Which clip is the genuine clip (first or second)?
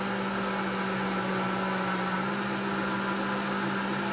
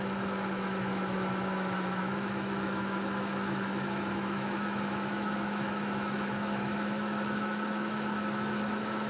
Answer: first